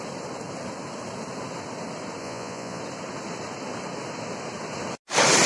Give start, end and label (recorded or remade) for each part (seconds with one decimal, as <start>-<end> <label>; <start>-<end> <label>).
0.0-2.2 recorded; 2.2-2.8 remade; 2.8-5.5 recorded